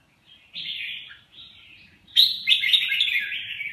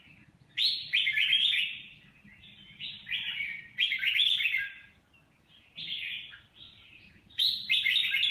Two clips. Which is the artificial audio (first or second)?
first